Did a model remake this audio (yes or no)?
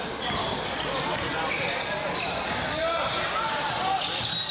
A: no